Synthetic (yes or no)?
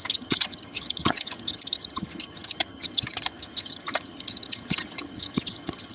yes